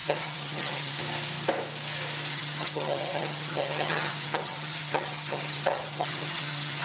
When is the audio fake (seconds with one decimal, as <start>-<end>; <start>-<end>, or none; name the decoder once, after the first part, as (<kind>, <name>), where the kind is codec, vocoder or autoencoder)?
0.0-1.0 (vocoder, HiFi-GAN); 2.3-6.8